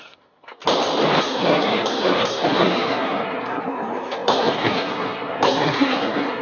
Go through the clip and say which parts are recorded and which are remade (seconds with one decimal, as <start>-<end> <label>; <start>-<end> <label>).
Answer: 0.0-0.6 remade; 0.6-1.2 recorded; 1.2-6.4 remade